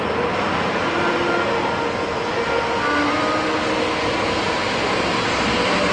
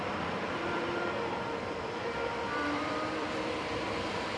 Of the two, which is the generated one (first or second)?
second